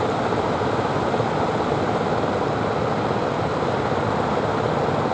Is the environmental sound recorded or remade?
recorded